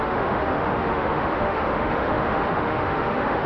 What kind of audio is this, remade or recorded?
remade